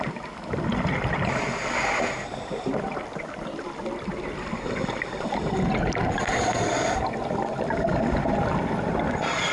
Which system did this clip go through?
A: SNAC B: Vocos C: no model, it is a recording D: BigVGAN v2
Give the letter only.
C